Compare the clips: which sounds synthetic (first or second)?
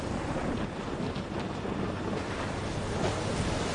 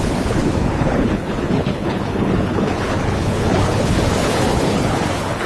second